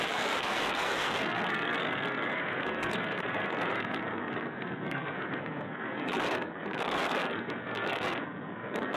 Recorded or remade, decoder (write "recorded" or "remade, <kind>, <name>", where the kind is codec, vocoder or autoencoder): remade, codec, SNAC